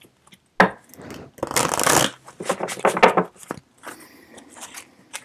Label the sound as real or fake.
real